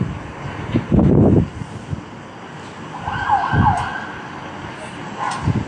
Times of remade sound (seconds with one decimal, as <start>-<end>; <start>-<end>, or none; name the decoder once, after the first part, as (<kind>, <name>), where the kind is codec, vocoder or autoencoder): none